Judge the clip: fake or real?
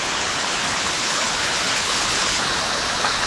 fake